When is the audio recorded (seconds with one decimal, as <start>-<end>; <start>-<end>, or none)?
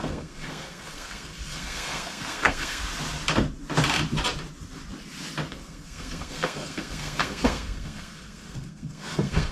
2.8-5.5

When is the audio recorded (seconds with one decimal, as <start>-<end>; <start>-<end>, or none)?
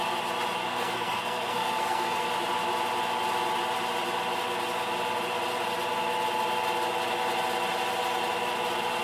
0.0-0.6; 2.3-9.0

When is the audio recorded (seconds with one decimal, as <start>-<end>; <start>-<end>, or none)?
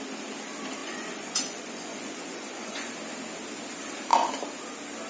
0.0-0.8; 2.9-5.1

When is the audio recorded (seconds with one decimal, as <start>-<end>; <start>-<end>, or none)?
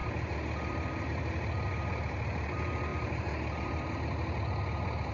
0.0-5.1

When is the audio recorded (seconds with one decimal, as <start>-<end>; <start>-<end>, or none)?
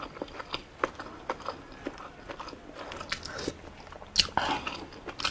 0.0-5.3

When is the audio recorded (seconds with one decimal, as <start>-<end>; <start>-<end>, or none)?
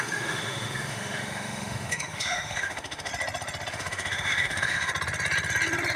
3.1-3.7; 4.9-6.0